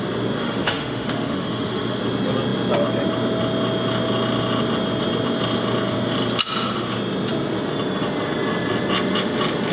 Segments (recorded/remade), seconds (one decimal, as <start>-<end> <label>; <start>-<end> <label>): 0.0-0.4 recorded; 0.4-2.0 remade; 2.0-9.7 recorded